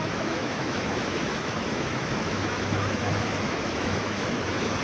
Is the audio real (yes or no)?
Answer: no